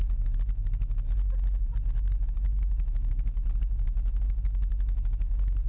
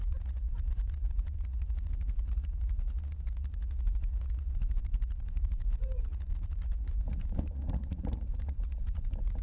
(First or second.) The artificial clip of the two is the second